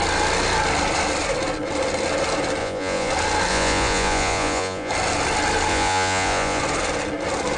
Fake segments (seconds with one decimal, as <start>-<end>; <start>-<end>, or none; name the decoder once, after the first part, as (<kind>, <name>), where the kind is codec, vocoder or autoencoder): 2.6-3.1 (vocoder, Vocos); 3.5-4.9; 5.7-6.6